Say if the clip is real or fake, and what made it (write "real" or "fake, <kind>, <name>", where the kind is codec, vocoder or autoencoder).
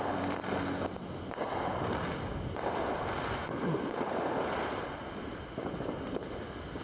real